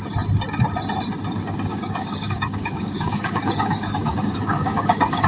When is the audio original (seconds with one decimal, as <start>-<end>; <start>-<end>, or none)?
0.0-1.7